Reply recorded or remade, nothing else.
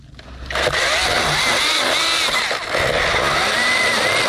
recorded